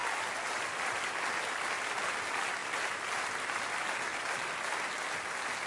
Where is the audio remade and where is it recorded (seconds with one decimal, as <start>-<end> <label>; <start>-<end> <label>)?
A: 0.0-2.2 remade; 2.2-2.6 recorded; 2.6-3.5 remade; 3.5-4.1 recorded; 4.1-5.3 remade; 5.3-5.7 recorded